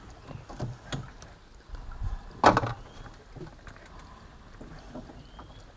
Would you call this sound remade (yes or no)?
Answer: no